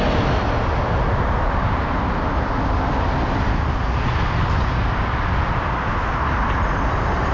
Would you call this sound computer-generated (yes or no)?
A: no